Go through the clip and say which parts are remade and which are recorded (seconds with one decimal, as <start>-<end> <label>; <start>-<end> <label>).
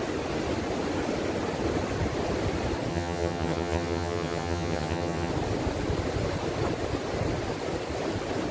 0.0-2.9 recorded; 2.9-5.3 remade; 5.3-8.5 recorded